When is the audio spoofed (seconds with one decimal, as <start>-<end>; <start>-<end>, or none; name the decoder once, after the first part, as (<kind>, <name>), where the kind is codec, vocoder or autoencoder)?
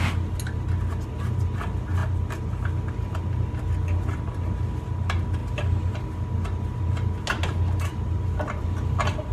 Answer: 7.9-9.3 (vocoder, BigVGAN v2)